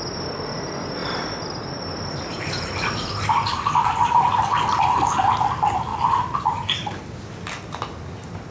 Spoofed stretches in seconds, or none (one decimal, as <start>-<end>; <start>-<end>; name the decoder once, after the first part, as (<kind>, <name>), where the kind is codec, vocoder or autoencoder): 1.0-4.3 (vocoder, BigVGAN v2); 5.9-7.0